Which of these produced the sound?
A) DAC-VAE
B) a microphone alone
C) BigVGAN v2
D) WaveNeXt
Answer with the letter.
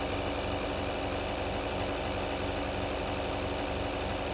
B